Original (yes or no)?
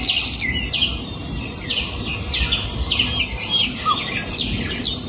yes